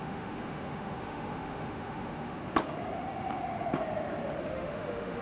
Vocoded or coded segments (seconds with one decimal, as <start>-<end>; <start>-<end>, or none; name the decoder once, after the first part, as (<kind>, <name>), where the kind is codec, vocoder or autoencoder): 0.0-2.4 (autoencoder, DAC-VAE); 4.4-5.2